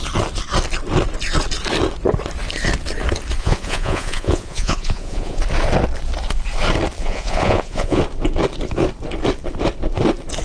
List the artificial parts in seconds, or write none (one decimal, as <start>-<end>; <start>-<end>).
3.4-5.4; 7.0-8.0